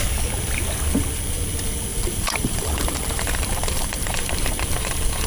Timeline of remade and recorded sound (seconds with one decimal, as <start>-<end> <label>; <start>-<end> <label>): 0.0-1.9 recorded; 1.9-4.3 remade; 4.3-5.3 recorded